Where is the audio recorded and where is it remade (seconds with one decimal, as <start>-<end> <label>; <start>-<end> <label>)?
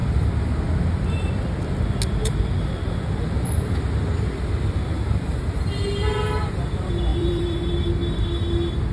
0.0-2.2 recorded; 2.2-3.7 remade; 3.7-4.9 recorded; 4.9-5.6 remade; 5.6-7.1 recorded; 7.1-7.7 remade; 7.7-8.9 recorded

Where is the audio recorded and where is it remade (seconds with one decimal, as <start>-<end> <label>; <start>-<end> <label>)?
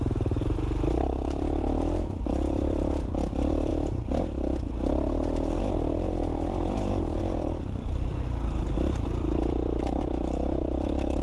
0.0-3.7 remade; 3.7-7.2 recorded; 7.2-11.2 remade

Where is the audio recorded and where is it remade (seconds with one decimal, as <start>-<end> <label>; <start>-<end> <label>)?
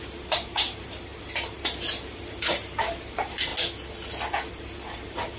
0.0-3.5 remade; 3.5-4.5 recorded; 4.5-5.4 remade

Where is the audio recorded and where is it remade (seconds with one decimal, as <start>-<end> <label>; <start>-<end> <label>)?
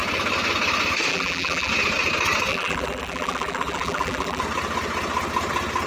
0.0-1.1 recorded; 1.1-1.7 remade; 1.7-2.5 recorded; 2.5-4.4 remade; 4.4-5.9 recorded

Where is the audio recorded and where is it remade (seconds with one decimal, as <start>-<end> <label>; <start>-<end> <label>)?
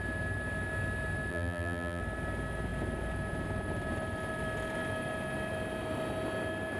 0.0-1.3 recorded; 1.3-2.0 remade; 2.0-6.8 recorded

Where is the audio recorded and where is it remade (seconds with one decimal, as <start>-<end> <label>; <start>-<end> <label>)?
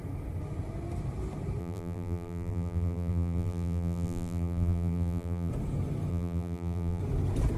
0.0-1.6 recorded; 1.6-5.5 remade; 5.5-6.1 recorded; 6.1-7.0 remade; 7.0-7.6 recorded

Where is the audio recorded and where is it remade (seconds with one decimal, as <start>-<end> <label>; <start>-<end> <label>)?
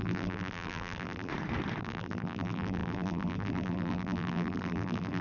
0.0-1.3 remade; 1.3-1.8 recorded; 1.8-5.2 remade